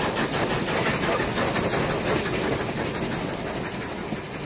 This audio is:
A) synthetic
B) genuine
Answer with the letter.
B